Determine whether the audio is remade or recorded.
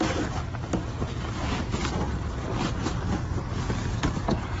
recorded